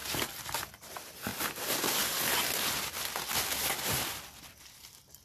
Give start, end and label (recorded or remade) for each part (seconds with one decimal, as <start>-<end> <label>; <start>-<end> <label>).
0.0-0.7 recorded; 0.7-1.3 remade; 1.3-4.4 recorded; 4.4-5.2 remade